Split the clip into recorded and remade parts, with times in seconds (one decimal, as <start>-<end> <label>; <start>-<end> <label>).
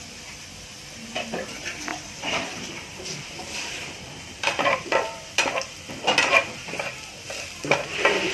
0.0-1.9 recorded; 1.9-6.6 remade; 6.6-8.3 recorded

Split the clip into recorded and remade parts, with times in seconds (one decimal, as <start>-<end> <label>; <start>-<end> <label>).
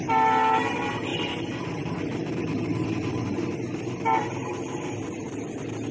0.0-1.1 recorded; 1.1-3.2 remade; 3.2-5.9 recorded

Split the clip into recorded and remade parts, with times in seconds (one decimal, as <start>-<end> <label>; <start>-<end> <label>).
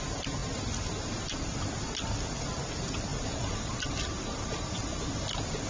0.0-3.1 recorded; 3.1-3.7 remade; 3.7-5.7 recorded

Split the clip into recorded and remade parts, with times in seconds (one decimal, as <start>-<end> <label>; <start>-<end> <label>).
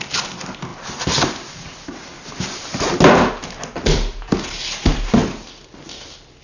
0.0-6.4 recorded